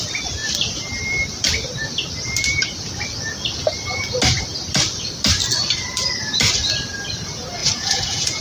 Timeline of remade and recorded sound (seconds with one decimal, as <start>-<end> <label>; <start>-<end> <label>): 0.0-7.6 recorded; 7.6-8.4 remade